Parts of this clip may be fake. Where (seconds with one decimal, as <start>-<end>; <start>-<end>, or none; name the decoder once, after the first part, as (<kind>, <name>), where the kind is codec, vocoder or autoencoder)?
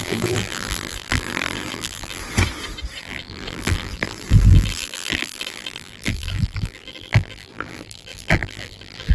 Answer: 0.0-2.2 (vocoder, BigVGAN v2); 3.0-9.1